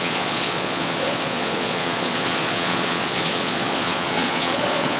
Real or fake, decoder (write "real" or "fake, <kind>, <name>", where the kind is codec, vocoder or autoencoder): fake, vocoder, Vocos